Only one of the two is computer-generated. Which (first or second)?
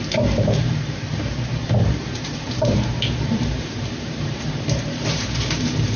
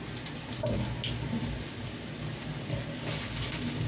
first